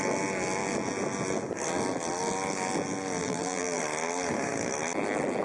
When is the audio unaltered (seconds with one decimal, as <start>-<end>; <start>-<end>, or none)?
0.0-3.2; 3.8-5.4